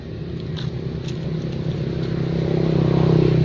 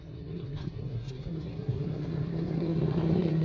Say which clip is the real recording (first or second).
first